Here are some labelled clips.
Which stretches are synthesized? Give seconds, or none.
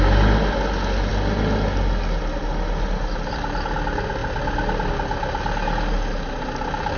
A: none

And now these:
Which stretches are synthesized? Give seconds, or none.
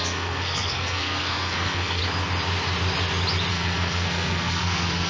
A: 0.0-2.0 (codec, SNAC); 3.5-5.1